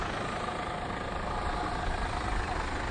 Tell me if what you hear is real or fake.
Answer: real